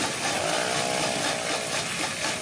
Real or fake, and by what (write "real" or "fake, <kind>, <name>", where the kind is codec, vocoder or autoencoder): real